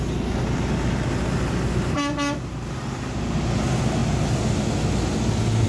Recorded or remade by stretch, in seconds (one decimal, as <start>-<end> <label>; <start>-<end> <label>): 0.0-5.7 recorded